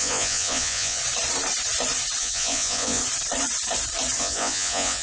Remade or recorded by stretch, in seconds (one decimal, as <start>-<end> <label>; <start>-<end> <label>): 0.0-1.0 remade; 1.0-2.2 recorded; 2.2-3.0 remade; 3.0-4.2 recorded; 4.2-5.0 remade